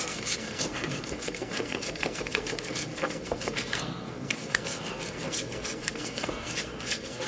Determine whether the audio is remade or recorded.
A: remade